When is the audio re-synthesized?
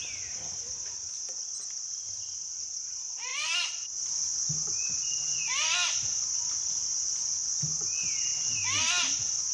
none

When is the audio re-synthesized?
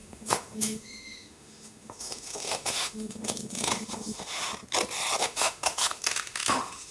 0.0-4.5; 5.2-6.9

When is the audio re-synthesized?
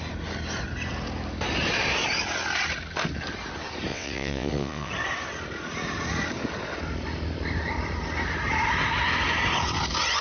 3.9-4.9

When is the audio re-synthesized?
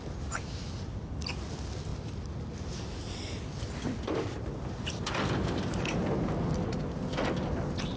none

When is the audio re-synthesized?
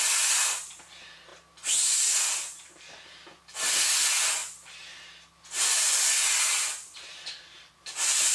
none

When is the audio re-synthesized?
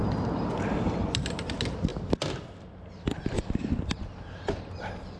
none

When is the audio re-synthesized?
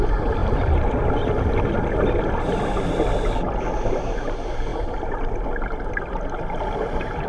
none